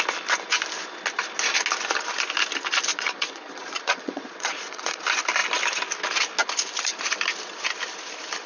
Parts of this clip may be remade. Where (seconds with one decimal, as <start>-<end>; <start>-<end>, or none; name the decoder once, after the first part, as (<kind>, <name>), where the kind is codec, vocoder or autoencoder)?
2.9-5.0 (vocoder, Vocos)